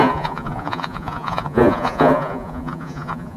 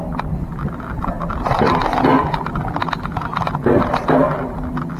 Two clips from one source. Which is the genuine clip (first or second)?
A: second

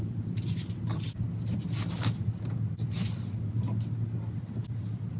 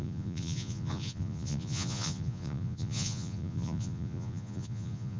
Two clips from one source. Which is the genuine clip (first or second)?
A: first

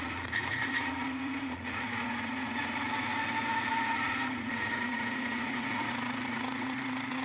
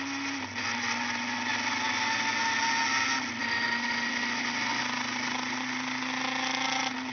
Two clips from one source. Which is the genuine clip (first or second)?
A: second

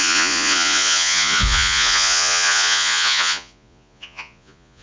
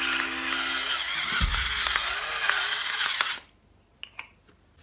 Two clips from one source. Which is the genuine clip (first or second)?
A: second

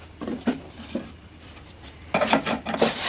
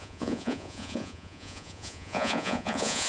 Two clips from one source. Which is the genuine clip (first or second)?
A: first